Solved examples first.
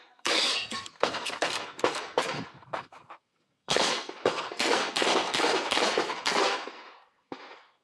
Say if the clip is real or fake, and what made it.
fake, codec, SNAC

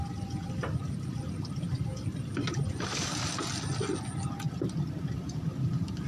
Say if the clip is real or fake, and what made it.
real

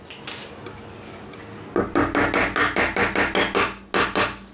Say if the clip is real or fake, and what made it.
real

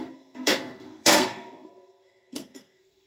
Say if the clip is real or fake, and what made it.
fake, codec, SNAC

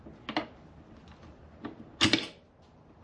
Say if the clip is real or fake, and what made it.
real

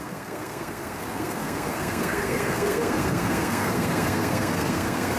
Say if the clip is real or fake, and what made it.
fake, codec, SNAC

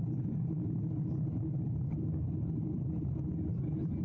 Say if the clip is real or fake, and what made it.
real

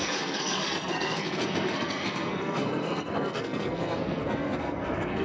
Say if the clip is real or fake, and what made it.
fake, codec, SNAC